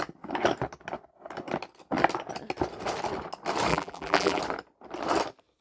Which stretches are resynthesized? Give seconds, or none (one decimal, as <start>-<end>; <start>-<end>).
3.7-4.4